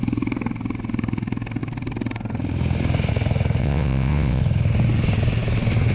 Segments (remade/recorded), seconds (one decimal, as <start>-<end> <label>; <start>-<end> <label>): 0.0-3.6 recorded; 3.6-4.4 remade; 4.4-5.9 recorded